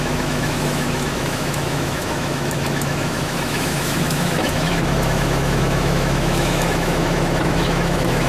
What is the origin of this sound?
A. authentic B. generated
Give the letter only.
B